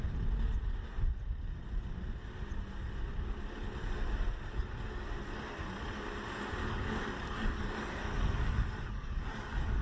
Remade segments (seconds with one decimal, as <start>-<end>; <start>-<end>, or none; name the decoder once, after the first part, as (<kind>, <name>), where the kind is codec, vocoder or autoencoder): 6.6-9.8 (codec, DAC)